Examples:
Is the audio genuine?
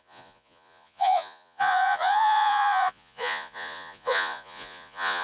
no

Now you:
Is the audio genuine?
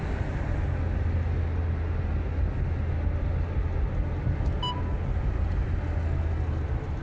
yes